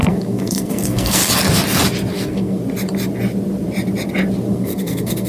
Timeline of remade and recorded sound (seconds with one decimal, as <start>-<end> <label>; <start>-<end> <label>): 0.0-1.2 remade; 1.2-2.1 recorded; 2.1-2.6 remade; 2.6-4.5 recorded; 4.5-5.3 remade